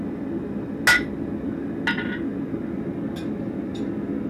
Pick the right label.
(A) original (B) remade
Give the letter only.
A